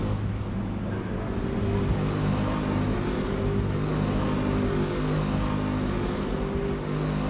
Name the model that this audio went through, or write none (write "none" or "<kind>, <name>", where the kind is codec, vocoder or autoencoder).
none